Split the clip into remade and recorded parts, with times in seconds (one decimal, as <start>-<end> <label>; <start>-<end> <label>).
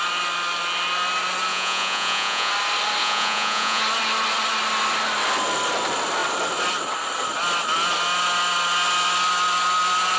0.0-1.5 recorded; 1.5-2.5 remade; 2.5-3.0 recorded; 3.0-3.8 remade; 3.8-10.2 recorded